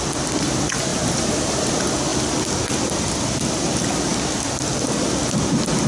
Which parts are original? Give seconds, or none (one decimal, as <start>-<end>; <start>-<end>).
0.0-0.9; 1.7-5.9